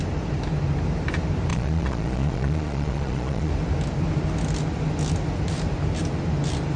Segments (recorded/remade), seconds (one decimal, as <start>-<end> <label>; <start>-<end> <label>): 0.0-1.5 recorded; 1.5-3.5 remade; 3.5-6.8 recorded